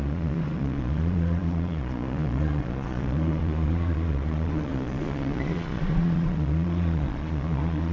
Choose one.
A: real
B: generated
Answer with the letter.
B